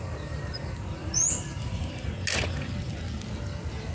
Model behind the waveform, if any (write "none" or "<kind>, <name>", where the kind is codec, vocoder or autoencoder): none